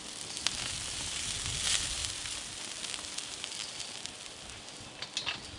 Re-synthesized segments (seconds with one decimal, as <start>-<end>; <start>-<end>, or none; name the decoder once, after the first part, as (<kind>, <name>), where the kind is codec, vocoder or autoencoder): none